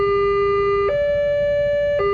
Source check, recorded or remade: recorded